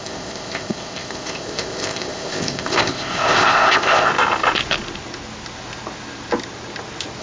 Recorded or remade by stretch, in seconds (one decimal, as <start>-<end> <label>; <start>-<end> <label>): 0.0-4.1 remade; 4.1-7.2 recorded